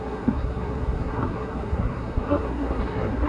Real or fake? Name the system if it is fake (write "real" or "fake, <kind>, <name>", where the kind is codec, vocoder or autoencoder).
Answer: fake, codec, SNAC